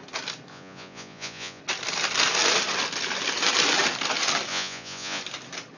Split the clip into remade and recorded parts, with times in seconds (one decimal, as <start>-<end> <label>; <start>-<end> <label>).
0.0-0.5 recorded; 0.5-1.6 remade; 1.6-4.5 recorded; 4.5-5.2 remade; 5.2-5.8 recorded